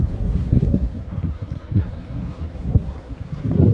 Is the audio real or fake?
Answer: fake